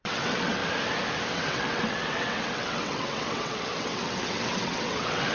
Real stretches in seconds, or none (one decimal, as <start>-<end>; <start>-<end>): 0.6-1.3